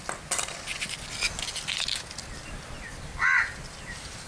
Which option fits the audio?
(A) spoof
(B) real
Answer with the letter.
B